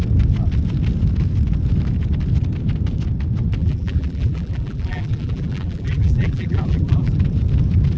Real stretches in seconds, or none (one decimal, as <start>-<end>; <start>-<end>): 0.0-3.6; 7.1-8.0